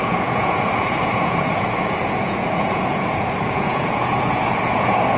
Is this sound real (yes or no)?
no